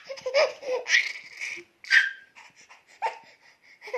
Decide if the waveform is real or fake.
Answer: real